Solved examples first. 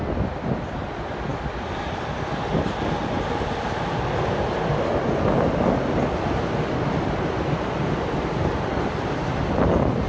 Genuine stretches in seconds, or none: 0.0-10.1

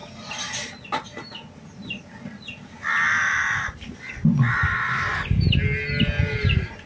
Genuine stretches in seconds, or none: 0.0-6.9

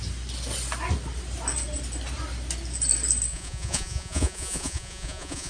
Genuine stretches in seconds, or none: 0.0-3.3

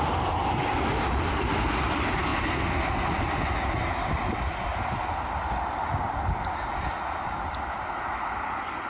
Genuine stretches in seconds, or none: 0.0-8.9